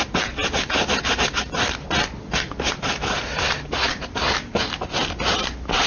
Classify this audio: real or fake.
real